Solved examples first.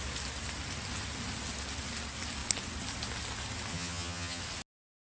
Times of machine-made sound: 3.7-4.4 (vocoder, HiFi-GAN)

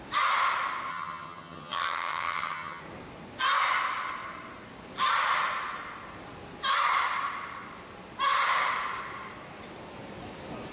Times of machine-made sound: 0.9-2.8 (vocoder, HiFi-GAN)

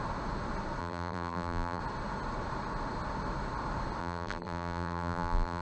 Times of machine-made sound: 0.8-1.8 (vocoder, BigVGAN v2); 4.0-5.6